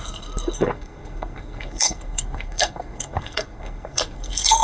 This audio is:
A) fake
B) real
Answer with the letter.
A